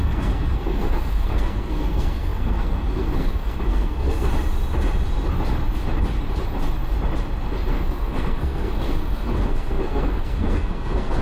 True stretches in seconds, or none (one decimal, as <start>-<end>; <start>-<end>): 4.3-7.7